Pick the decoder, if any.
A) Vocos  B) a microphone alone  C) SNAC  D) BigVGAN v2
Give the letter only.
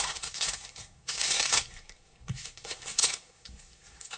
C